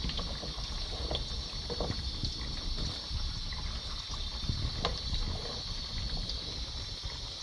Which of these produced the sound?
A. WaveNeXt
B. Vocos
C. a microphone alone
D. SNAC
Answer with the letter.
C